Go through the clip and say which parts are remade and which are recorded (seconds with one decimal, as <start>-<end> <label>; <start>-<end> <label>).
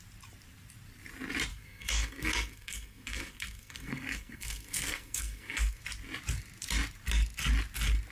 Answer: 0.0-1.5 recorded; 1.5-5.8 remade; 5.8-8.1 recorded